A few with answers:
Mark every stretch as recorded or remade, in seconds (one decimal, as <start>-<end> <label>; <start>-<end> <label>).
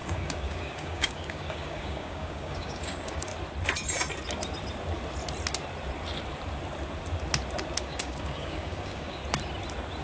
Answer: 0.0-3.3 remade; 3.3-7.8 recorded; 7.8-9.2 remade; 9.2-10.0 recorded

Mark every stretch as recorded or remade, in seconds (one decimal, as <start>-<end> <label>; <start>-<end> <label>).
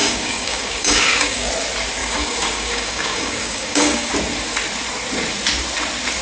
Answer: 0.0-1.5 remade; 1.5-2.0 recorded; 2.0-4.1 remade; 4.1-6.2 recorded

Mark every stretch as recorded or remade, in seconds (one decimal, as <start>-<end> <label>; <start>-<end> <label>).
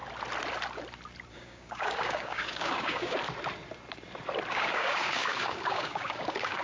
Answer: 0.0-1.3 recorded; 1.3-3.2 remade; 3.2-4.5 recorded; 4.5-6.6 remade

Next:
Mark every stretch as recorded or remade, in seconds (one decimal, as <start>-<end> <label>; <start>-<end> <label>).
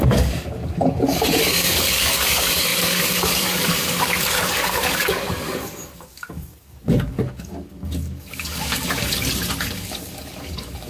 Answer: 0.0-9.0 remade; 9.0-9.6 recorded; 9.6-10.9 remade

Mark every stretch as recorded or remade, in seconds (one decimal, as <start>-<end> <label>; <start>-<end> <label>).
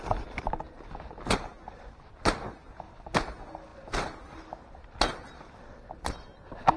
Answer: 0.0-6.8 recorded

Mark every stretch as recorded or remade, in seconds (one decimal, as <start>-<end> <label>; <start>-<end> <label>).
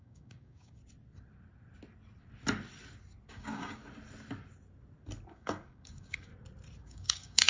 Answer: 0.0-0.8 remade; 0.8-3.3 recorded; 3.3-3.8 remade; 3.8-5.3 recorded; 5.3-6.3 remade; 6.3-6.8 recorded; 6.8-7.5 remade